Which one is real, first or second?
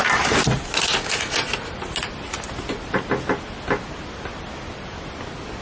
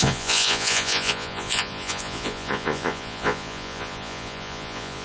first